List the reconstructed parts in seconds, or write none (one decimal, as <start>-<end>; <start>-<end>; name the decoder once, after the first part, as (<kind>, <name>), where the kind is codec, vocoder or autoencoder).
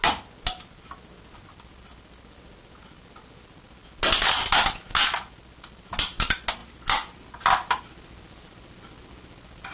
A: none